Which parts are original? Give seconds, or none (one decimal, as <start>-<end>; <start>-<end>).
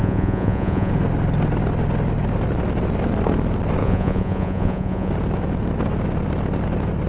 0.9-3.8; 5.1-7.1